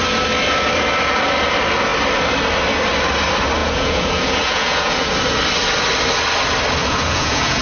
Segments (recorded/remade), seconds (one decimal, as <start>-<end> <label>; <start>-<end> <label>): 0.0-3.6 recorded; 3.6-5.1 remade; 5.1-6.8 recorded; 6.8-7.6 remade